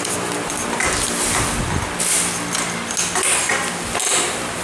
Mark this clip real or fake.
real